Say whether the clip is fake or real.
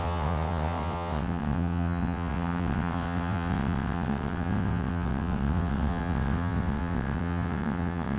fake